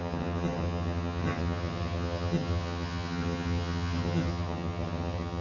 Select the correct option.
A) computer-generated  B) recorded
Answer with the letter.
A